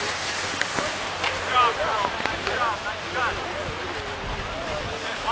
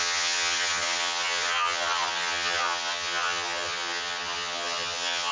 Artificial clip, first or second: second